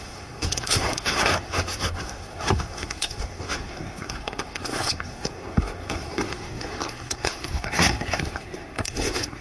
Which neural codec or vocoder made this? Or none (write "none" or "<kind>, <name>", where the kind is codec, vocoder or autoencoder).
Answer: codec, SNAC